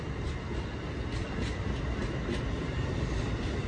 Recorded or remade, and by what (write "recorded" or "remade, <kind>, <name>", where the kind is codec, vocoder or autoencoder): recorded